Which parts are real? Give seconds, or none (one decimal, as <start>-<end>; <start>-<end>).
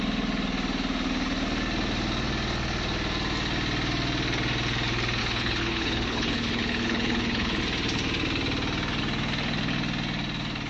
0.0-5.2; 7.6-10.7